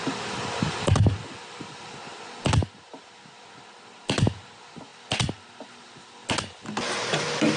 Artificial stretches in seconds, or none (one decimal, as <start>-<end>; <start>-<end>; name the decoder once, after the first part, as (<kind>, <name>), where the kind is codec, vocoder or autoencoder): none